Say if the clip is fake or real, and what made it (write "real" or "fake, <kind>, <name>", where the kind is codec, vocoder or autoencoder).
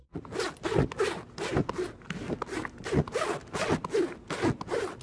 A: real